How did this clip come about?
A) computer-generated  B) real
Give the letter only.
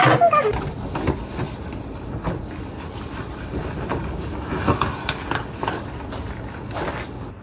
B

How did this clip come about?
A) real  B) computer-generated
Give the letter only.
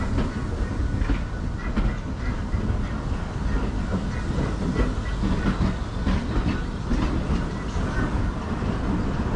A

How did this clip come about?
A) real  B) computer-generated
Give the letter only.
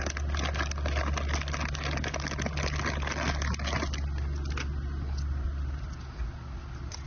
A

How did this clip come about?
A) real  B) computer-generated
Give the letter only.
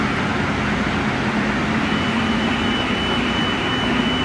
A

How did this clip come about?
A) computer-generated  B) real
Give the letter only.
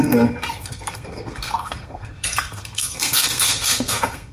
A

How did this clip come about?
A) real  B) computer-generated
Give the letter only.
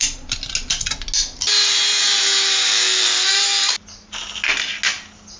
A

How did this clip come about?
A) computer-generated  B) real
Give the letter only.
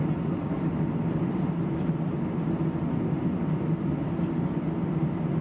B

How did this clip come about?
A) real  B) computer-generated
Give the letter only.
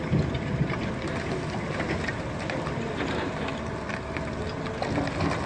A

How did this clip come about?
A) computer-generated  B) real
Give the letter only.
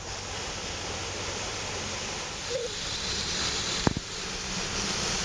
B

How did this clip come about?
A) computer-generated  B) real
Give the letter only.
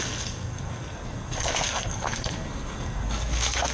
A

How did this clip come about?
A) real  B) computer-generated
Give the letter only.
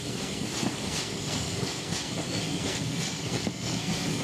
B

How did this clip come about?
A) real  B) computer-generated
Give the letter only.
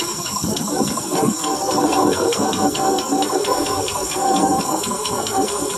B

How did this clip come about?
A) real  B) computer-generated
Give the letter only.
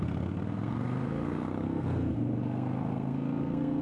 B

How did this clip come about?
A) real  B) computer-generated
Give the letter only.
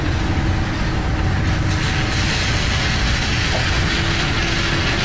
A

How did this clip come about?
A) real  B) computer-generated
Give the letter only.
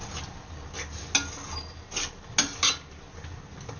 A